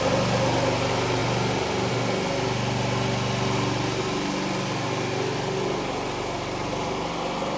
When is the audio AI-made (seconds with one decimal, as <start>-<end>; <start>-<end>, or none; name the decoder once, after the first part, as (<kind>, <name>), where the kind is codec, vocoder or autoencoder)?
none